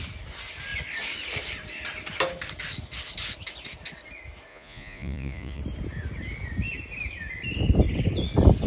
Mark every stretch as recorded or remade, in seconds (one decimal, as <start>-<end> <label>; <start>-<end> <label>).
0.0-4.5 recorded; 4.5-5.6 remade; 5.6-8.7 recorded